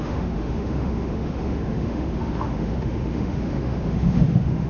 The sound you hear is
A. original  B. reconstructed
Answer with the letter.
B